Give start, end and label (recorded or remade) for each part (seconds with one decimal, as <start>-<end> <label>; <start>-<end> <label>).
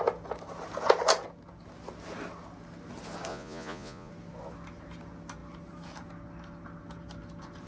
0.0-3.3 recorded; 3.3-4.1 remade; 4.1-7.7 recorded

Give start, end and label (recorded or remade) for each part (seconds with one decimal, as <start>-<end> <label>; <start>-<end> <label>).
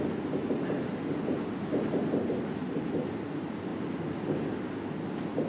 0.0-5.5 recorded